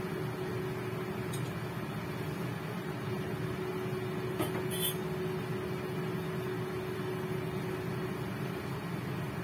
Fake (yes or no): no